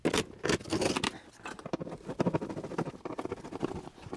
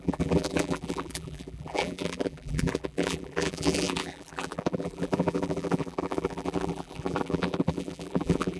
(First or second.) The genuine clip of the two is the first